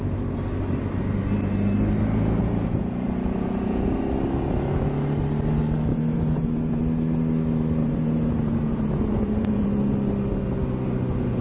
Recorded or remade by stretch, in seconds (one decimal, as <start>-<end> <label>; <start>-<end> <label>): 0.0-2.4 recorded; 2.4-4.0 remade; 4.0-5.9 recorded; 5.9-6.8 remade; 6.8-7.8 recorded; 7.8-9.7 remade; 9.7-11.4 recorded